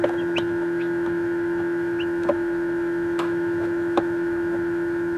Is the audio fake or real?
fake